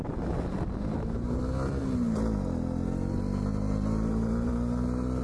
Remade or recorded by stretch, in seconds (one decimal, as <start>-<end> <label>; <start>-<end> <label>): 0.0-3.5 recorded; 3.5-4.5 remade; 4.5-5.2 recorded